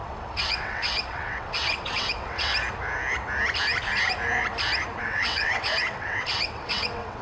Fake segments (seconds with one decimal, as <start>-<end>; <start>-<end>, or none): 0.0-2.5; 5.0-7.2